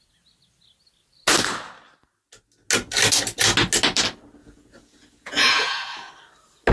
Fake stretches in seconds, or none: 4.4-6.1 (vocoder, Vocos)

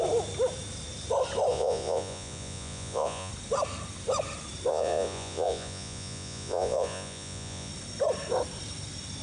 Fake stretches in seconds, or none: 1.5-3.3 (vocoder, Vocos); 4.7-7.7

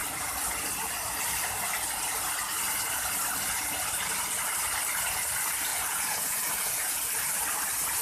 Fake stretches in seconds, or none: 5.7-7.0 (vocoder, Vocos)

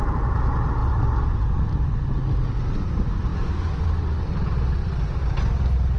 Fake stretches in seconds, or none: none

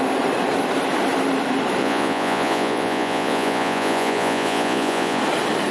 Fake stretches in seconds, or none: 1.8-5.2 (vocoder, Vocos)

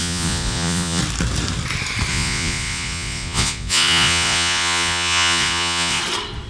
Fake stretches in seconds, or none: 0.0-1.0 (vocoder, Vocos); 2.1-6.0

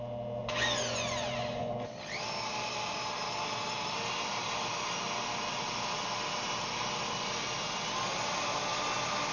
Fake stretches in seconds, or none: 0.4-1.9 (vocoder, Vocos)

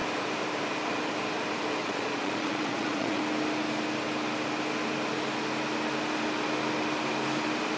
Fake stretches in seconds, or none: 1.8-3.2 (vocoder, Vocos)